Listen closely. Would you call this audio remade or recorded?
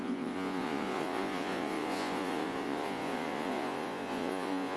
remade